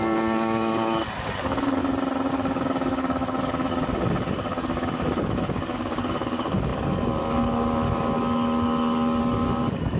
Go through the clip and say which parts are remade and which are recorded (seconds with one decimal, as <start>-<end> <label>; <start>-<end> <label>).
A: 0.0-1.8 remade; 1.8-2.3 recorded; 2.3-10.0 remade